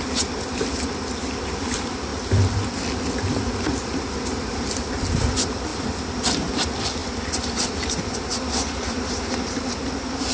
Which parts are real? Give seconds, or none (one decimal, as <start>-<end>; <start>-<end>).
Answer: 0.0-5.7; 6.5-7.0; 7.5-10.3